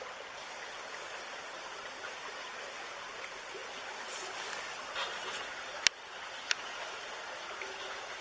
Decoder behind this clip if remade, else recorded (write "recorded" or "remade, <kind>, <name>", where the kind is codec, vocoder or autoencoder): recorded